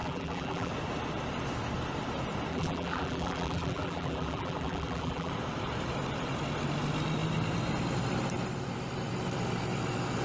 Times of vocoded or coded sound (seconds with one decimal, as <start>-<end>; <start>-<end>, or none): 0.0-0.7; 2.5-5.3